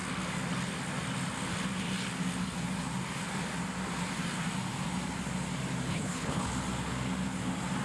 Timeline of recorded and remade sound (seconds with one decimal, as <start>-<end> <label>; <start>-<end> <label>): 0.0-5.9 recorded; 5.9-6.5 remade; 6.5-7.8 recorded